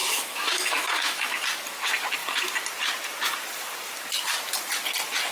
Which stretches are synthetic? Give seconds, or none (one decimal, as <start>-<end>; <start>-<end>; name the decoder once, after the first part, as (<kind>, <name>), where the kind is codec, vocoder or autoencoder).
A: 0.0-1.4 (autoencoder, DAC-VAE)